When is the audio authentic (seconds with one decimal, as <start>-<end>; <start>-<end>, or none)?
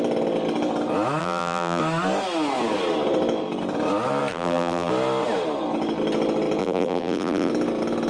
0.0-1.2; 1.8-4.3; 4.9-6.6; 7.5-8.1